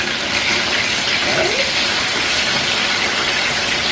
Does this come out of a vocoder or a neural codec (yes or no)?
no